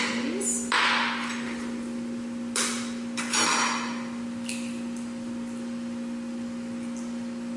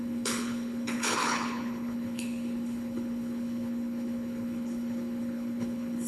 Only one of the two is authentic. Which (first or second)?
first